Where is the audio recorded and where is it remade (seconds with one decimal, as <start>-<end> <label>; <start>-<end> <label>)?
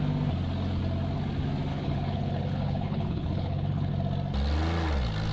0.0-1.7 recorded; 1.7-3.9 remade; 3.9-5.3 recorded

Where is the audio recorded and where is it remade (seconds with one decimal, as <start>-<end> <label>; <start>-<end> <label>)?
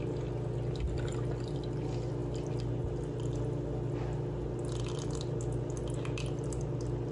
0.0-7.1 recorded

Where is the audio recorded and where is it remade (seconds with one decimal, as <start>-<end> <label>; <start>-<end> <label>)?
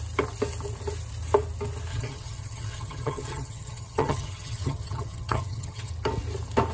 0.0-1.9 recorded; 1.9-5.9 remade; 5.9-6.7 recorded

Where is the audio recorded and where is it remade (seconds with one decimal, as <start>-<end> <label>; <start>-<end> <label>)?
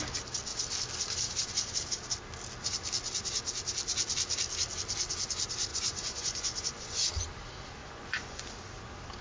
0.0-5.7 recorded; 5.7-7.1 remade; 7.1-7.8 recorded; 7.8-8.5 remade; 8.5-9.2 recorded